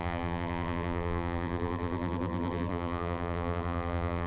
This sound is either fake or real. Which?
fake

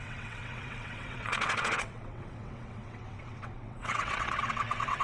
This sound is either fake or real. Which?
fake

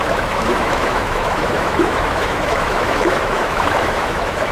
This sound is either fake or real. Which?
fake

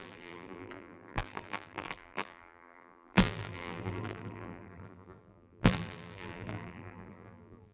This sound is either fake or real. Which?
fake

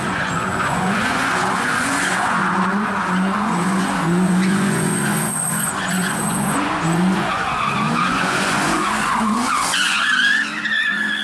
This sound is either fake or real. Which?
fake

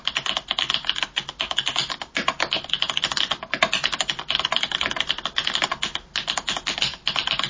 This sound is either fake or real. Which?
real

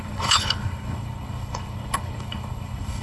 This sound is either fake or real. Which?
fake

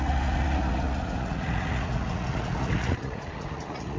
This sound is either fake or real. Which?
fake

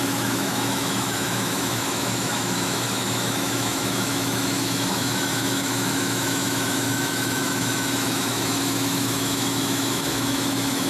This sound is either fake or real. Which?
fake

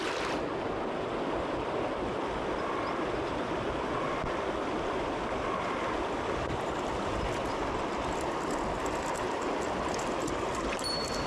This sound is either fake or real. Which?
real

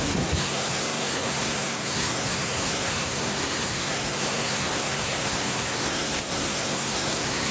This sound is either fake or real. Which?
fake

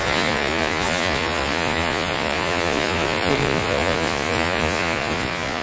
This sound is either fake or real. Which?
fake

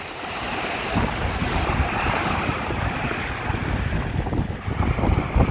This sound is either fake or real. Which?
real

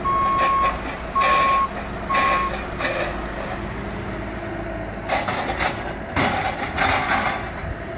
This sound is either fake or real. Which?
real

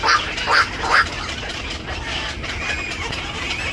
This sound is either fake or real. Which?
real